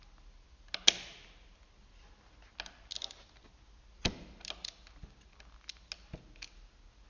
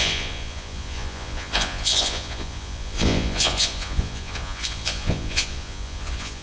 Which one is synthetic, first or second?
second